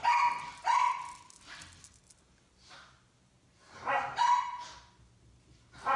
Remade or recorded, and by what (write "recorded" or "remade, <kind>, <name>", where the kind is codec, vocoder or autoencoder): recorded